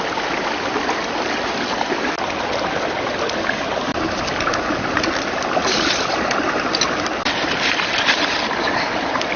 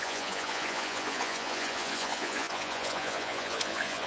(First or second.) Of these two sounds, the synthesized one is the second